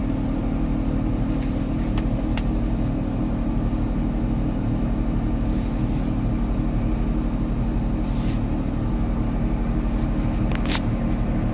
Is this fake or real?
real